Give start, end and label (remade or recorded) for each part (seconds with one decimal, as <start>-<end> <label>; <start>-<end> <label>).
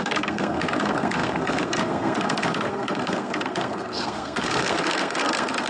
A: 0.0-5.7 remade